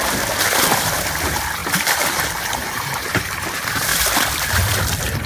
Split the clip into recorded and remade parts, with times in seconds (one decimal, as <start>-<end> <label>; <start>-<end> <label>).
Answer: 0.0-1.6 recorded; 1.6-3.2 remade; 3.2-3.9 recorded; 3.9-5.3 remade